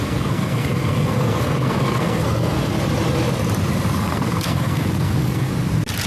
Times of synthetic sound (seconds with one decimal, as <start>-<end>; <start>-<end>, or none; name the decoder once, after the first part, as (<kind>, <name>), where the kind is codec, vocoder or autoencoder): 0.0-2.7 (codec, SNAC); 4.0-5.5